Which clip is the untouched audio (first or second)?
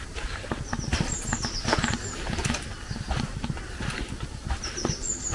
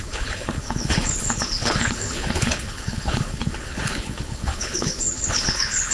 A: first